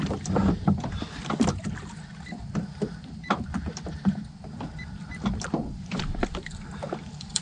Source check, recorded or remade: remade